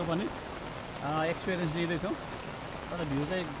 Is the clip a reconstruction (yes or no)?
no